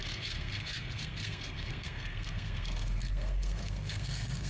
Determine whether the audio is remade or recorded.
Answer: remade